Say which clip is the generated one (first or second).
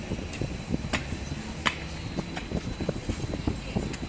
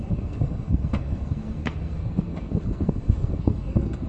second